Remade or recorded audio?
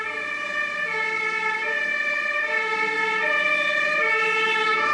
recorded